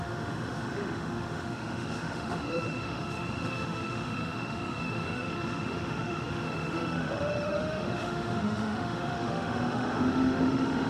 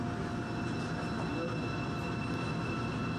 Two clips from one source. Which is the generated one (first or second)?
first